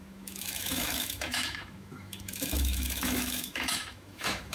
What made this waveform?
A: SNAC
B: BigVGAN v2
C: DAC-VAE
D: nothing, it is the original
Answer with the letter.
C